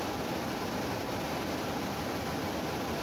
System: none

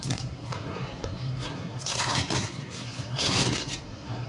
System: codec, SNAC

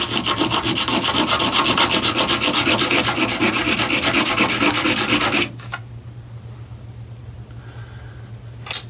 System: none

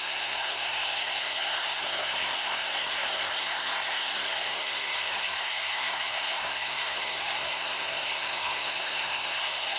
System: codec, SNAC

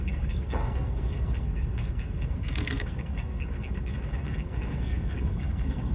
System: codec, SNAC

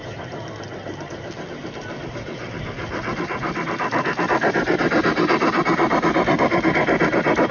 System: none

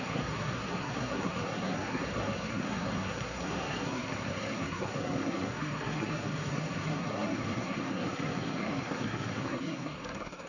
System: codec, SNAC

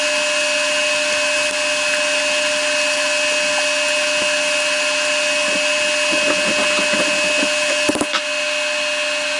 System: none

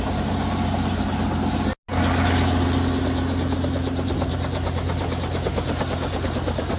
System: none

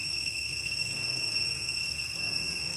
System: codec, SNAC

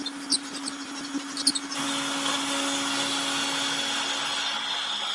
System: none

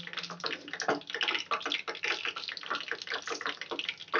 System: none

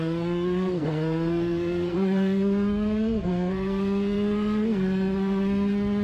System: codec, SNAC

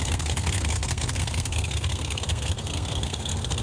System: codec, SNAC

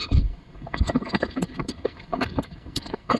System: codec, SNAC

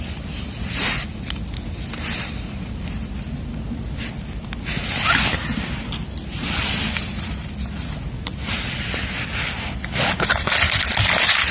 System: none